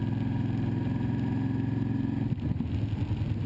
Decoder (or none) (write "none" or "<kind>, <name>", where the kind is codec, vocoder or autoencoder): none